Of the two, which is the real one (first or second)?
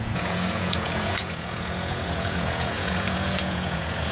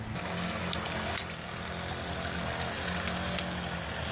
second